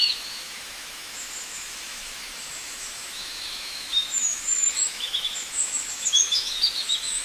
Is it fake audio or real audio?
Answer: fake